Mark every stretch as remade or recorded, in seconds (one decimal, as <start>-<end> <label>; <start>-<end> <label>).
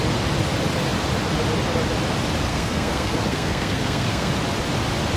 0.0-2.5 recorded; 2.5-4.3 remade; 4.3-5.2 recorded